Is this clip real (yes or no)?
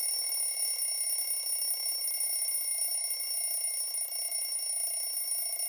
yes